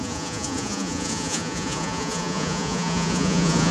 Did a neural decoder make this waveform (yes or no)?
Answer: yes